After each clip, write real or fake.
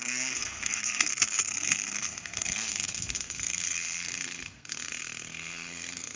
fake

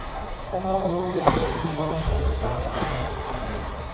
fake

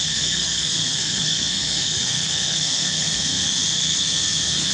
fake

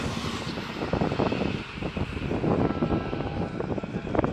real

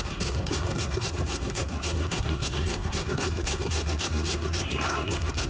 fake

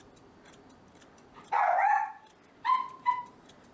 real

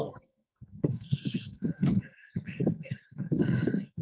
fake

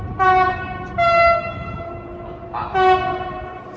real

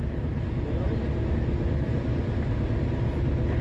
real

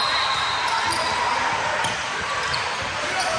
real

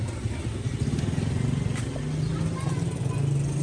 real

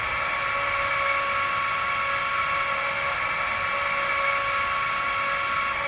real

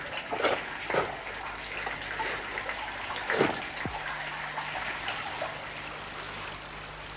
real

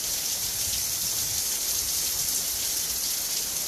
real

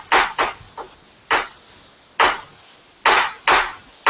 real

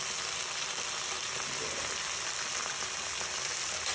real